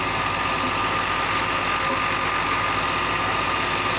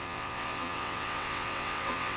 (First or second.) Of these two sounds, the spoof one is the second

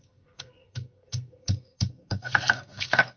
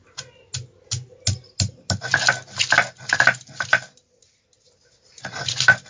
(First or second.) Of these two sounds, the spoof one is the first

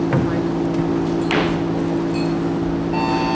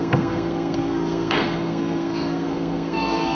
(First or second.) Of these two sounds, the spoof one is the second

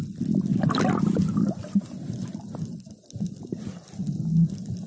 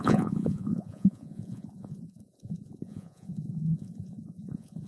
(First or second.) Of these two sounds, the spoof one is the second